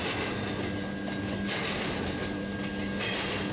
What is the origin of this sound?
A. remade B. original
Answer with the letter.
B